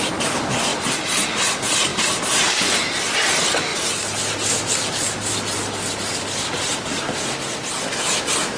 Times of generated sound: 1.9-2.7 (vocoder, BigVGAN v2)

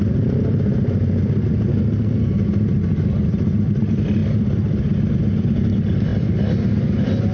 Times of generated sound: 1.7-2.4 (codec, SNAC)